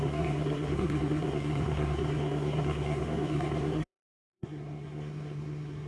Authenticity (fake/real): fake